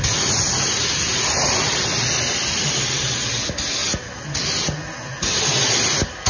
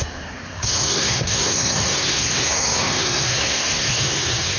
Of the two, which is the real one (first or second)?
first